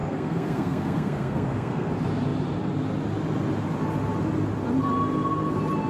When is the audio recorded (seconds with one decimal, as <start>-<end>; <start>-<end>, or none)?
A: 1.9-5.9